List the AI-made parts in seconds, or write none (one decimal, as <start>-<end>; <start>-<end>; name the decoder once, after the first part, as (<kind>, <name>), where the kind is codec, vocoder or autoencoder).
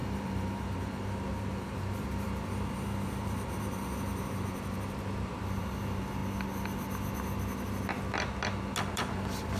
0.0-6.2 (vocoder, BigVGAN v2); 8.9-9.6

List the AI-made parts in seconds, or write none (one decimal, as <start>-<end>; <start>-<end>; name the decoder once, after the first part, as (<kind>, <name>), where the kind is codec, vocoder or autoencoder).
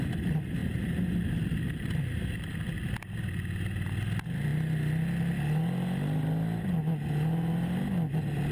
none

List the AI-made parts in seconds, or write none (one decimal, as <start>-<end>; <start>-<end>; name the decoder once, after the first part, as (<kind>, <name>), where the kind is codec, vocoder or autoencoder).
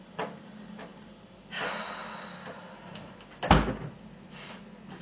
none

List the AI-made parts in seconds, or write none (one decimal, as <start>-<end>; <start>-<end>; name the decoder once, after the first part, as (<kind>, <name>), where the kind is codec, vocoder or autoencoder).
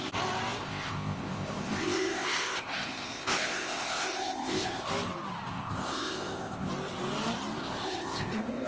0.6-4.9 (codec, ZipCodec); 5.5-6.7; 7.6-8.7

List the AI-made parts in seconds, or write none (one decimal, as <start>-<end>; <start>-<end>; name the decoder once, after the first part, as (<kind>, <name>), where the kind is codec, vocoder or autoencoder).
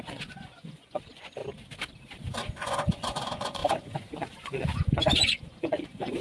0.0-1.4 (vocoder, Vocos); 2.6-6.2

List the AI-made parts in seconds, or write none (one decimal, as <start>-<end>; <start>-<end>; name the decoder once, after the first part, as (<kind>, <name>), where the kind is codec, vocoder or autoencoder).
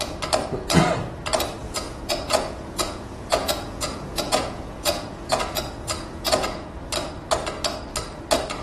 1.6-6.7 (vocoder, Vocos)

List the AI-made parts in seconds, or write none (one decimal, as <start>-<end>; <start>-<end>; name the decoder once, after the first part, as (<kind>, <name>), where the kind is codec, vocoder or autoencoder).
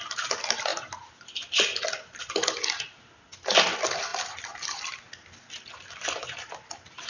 none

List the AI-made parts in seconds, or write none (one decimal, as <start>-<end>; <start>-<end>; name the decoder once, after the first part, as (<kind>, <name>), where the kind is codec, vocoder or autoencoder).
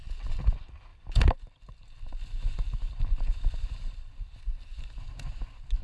0.9-4.4 (vocoder, BigVGAN v2)